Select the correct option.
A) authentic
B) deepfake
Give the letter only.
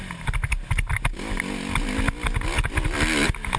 A